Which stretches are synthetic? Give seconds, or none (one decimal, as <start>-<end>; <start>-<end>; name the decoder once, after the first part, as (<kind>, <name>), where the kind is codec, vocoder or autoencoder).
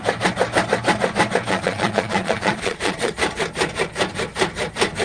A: 1.5-3.1 (vocoder, Vocos)